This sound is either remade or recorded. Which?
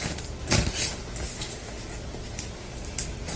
recorded